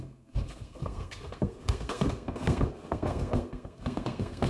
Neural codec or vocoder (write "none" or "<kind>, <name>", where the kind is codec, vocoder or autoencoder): codec, SNAC